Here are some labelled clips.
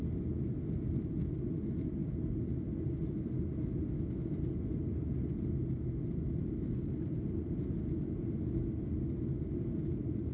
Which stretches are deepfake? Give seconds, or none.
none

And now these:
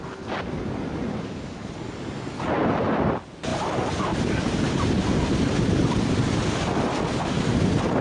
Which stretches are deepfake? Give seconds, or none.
none

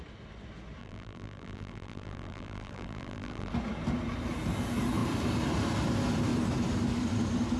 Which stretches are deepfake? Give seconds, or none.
0.8-3.5 (vocoder, BigVGAN v2)

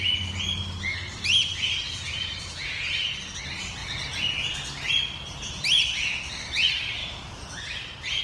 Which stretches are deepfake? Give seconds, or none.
none

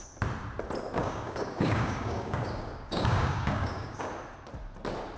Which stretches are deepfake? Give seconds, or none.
1.0-4.1 (codec, DAC)

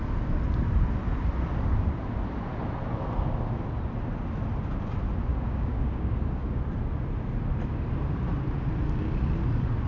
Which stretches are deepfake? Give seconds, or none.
5.3-6.6 (codec, DAC)

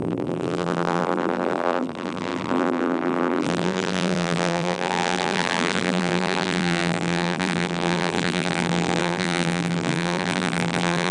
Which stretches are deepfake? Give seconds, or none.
0.0-11.1 (vocoder, BigVGAN v2)

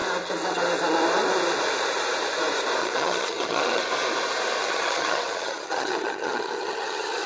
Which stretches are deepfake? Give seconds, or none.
2.8-3.8 (vocoder, HiFi-GAN); 4.6-7.3